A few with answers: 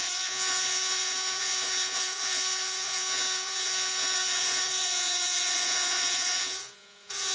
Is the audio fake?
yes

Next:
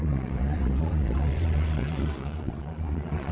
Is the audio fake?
yes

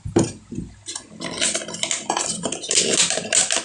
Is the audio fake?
no